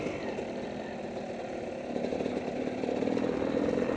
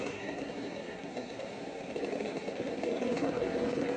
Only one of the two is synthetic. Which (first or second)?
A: second